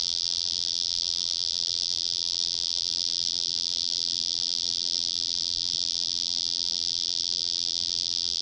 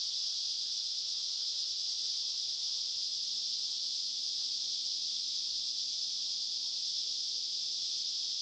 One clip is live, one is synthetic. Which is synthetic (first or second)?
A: first